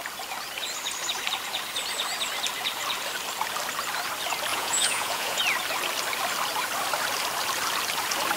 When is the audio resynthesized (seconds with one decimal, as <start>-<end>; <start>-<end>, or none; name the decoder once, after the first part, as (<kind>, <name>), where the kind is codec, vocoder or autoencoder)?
4.5-5.4 (vocoder, Vocos)